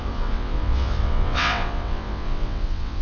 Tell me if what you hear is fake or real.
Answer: fake